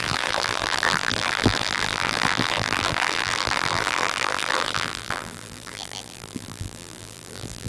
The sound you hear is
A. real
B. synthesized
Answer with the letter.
B